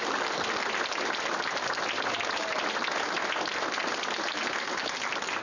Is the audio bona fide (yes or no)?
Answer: yes